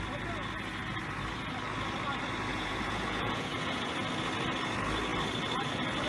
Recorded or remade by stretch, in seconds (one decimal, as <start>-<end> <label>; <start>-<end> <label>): 0.0-2.5 recorded; 2.5-3.9 remade; 3.9-6.1 recorded